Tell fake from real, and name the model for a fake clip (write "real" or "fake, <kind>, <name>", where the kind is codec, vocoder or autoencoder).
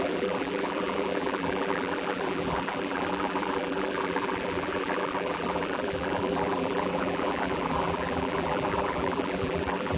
fake, vocoder, BigVGAN v2